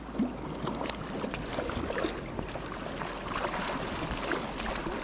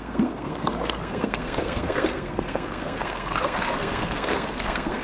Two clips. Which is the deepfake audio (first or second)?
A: second